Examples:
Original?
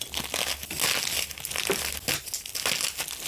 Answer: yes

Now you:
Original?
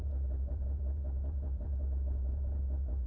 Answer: no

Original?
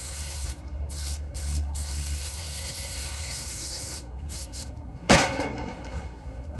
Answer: no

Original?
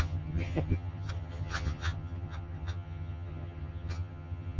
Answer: no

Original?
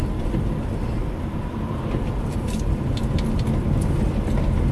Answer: yes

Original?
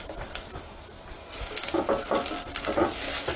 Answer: yes